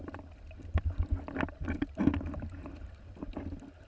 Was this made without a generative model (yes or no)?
yes